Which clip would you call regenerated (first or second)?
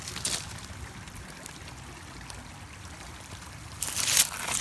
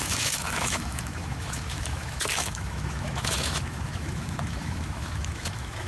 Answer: second